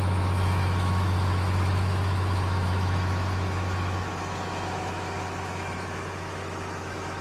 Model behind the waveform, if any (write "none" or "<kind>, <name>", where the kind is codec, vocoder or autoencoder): autoencoder, DAC-VAE